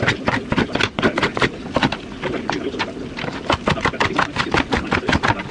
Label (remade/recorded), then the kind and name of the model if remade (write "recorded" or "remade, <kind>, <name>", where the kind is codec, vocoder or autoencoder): recorded